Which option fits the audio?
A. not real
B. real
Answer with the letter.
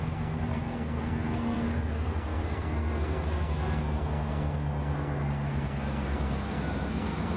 A